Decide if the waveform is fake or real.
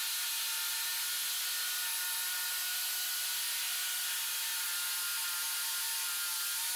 real